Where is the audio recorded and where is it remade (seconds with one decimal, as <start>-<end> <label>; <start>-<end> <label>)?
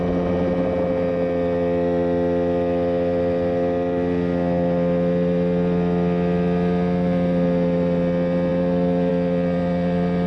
0.0-10.3 recorded